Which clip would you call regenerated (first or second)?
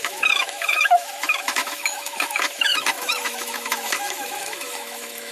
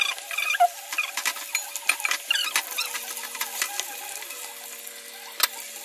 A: first